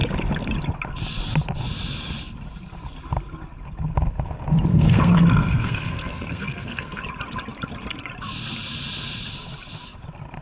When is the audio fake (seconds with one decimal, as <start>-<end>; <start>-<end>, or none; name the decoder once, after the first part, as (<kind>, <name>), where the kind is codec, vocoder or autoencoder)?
4.7-7.0 (codec, SNAC)